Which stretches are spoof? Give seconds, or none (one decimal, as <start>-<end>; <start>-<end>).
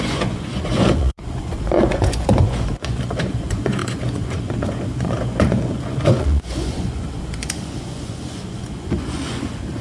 0.0-9.8